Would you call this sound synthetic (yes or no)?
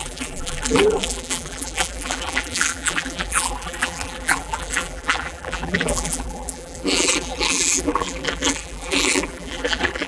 yes